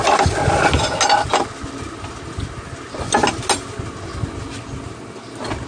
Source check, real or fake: real